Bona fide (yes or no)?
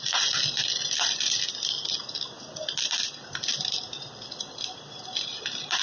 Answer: yes